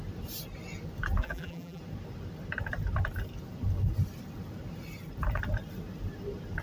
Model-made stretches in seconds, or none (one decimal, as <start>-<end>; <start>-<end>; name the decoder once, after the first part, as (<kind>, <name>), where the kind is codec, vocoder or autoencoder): 1.2-1.8 (vocoder, BigVGAN v2)